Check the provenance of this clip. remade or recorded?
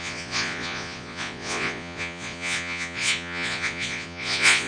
remade